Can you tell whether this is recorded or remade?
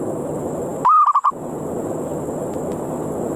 recorded